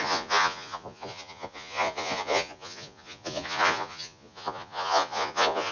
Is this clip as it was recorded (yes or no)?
no